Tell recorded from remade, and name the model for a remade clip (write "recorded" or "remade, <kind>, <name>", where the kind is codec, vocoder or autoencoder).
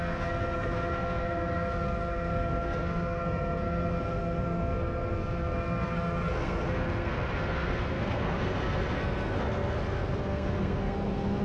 remade, codec, SNAC